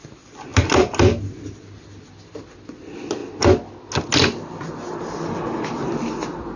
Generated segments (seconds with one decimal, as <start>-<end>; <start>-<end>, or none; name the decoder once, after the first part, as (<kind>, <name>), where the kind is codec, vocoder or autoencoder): none